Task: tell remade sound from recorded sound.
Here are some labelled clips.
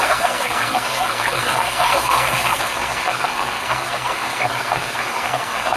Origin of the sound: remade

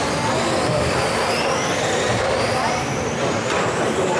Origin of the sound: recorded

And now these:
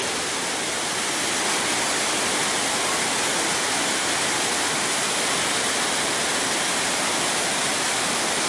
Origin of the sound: recorded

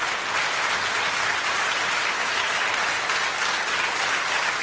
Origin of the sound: recorded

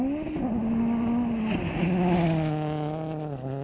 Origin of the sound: recorded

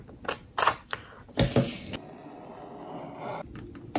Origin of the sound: recorded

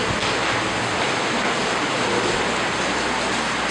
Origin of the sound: recorded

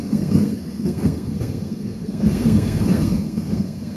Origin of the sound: remade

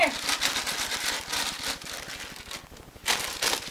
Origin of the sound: recorded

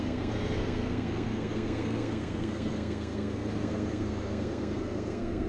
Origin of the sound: remade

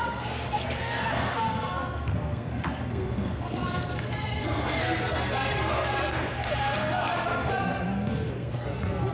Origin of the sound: remade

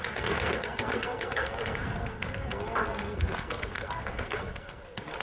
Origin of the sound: remade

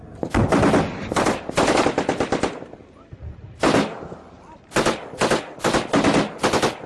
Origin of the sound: recorded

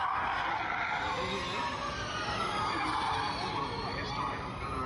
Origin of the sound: recorded